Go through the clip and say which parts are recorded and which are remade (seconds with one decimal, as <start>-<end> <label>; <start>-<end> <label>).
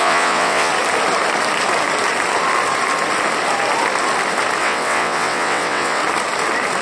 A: 0.0-0.7 remade; 0.7-4.6 recorded; 4.6-6.0 remade; 6.0-6.8 recorded